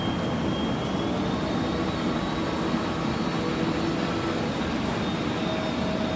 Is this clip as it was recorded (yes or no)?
yes